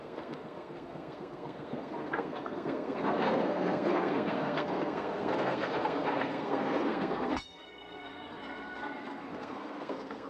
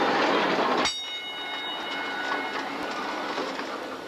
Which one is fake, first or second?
first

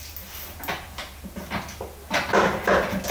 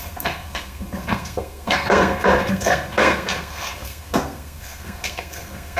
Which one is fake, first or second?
second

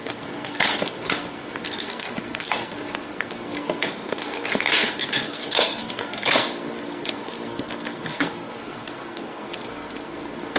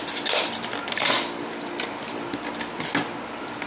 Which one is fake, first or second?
first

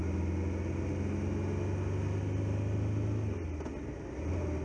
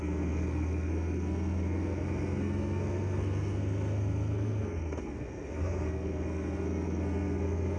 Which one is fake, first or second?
second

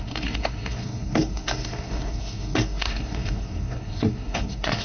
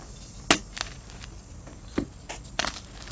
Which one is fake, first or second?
first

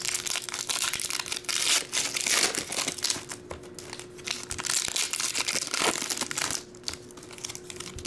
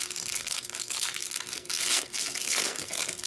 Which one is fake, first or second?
second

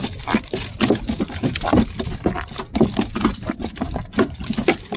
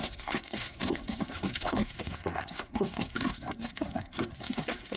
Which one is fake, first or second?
second